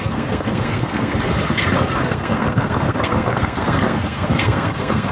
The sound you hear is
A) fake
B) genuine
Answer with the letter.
A